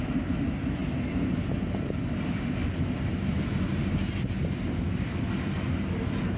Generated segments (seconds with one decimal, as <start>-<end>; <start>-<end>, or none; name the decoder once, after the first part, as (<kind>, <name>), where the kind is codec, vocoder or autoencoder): none